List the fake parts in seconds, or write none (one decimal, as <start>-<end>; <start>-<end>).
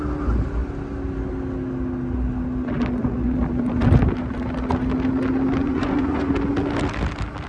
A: 5.6-6.3